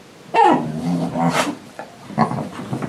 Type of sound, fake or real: real